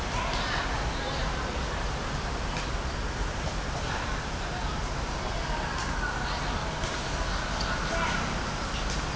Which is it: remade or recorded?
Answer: recorded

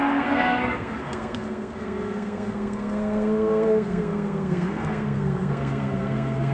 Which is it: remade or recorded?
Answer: remade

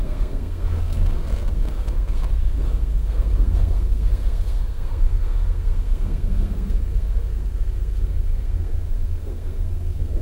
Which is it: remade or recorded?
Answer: remade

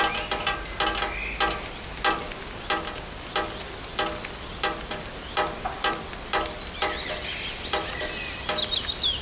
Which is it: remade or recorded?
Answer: recorded